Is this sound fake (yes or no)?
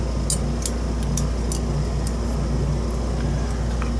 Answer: no